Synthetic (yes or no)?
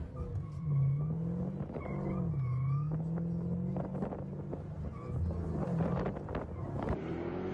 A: no